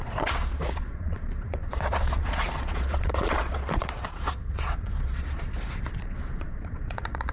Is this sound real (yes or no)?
no